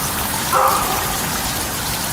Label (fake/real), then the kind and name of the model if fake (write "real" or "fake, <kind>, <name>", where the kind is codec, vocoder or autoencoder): fake, vocoder, BigVGAN v2